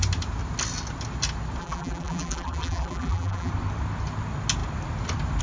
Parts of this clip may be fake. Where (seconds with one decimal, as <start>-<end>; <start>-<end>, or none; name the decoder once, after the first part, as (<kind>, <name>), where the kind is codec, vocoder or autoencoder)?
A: 1.6-3.5 (vocoder, BigVGAN v2)